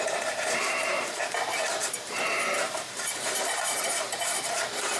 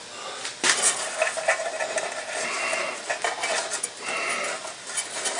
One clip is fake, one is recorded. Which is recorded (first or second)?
second